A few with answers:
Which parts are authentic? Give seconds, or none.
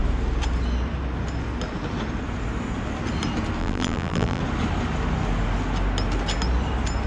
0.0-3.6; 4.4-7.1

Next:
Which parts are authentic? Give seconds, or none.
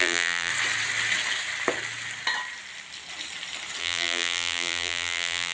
0.5-3.8